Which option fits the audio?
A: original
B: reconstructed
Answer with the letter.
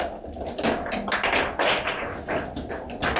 A